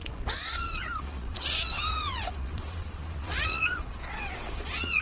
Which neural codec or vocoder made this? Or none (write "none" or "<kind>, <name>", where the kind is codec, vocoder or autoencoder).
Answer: vocoder, Vocos